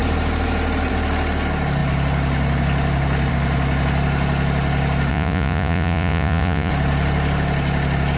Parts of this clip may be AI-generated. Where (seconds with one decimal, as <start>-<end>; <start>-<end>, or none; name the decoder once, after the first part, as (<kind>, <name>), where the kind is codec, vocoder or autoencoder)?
5.1-6.7 (vocoder, Vocos)